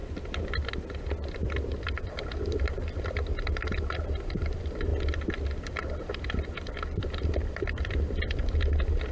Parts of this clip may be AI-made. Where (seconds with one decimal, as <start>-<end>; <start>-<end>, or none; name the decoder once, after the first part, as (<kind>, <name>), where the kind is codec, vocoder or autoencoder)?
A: 1.8-4.9 (vocoder, BigVGAN v2); 5.7-9.1